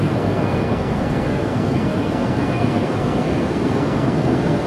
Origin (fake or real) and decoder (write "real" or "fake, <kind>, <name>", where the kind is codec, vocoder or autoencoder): fake, codec, SNAC